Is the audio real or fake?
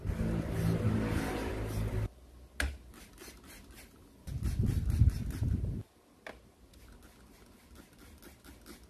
real